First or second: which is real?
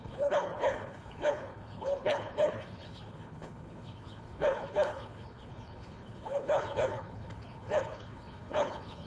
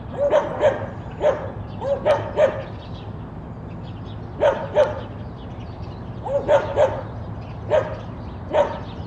second